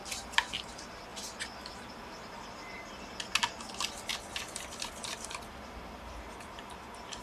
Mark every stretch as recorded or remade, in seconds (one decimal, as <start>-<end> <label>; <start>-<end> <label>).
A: 0.0-7.2 recorded